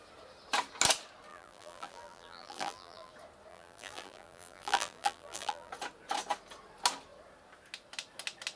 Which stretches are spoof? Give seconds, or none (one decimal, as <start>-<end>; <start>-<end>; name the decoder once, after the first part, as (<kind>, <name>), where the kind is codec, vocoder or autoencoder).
1.3-3.1 (vocoder, BigVGAN v2); 3.5-5.7